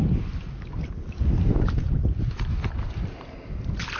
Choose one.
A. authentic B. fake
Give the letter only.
A